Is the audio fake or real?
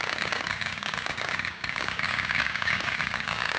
fake